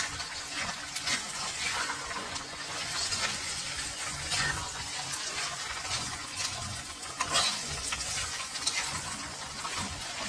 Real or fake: fake